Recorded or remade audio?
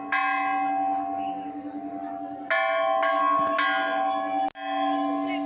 recorded